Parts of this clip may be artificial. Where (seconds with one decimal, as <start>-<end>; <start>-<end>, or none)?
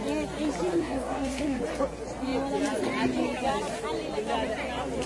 0.7-1.6